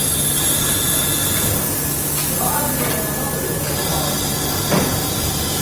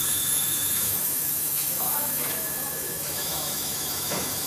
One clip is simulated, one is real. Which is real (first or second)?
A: first